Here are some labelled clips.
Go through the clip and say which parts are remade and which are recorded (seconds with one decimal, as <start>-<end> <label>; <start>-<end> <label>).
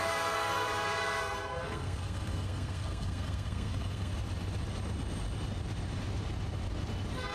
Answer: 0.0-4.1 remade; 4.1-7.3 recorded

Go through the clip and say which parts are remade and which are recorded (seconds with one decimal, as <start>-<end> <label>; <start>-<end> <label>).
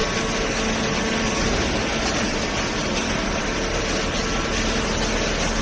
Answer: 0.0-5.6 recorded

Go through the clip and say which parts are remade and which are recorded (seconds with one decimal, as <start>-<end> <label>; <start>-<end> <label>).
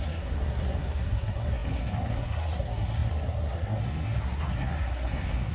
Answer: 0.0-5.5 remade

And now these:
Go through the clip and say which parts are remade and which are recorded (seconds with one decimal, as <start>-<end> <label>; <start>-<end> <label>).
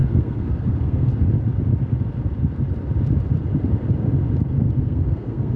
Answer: 0.0-1.1 remade; 1.1-4.5 recorded; 4.5-5.6 remade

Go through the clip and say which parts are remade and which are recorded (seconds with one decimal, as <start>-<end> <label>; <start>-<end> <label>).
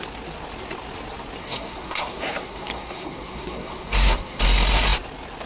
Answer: 0.0-1.4 recorded; 1.4-4.4 remade; 4.4-5.5 recorded